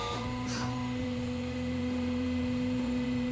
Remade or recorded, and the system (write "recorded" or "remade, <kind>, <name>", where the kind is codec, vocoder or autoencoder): remade, vocoder, BigVGAN v2